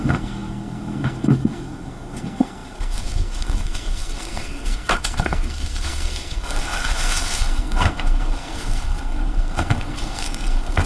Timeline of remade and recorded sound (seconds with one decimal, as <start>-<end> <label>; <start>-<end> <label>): 0.0-10.9 remade